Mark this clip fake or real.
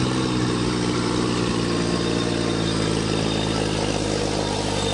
real